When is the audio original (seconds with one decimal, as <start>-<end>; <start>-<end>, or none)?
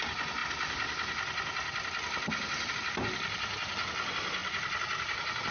0.0-5.5